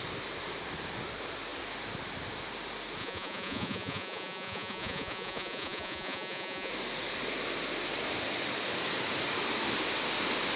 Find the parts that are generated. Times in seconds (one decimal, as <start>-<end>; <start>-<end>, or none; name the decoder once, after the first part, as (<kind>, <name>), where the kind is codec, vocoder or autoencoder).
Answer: 3.0-6.7 (vocoder, Vocos)